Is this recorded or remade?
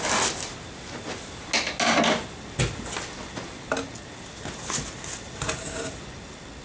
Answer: recorded